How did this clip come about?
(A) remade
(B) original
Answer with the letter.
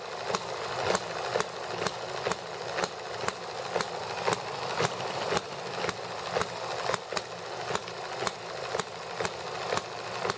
B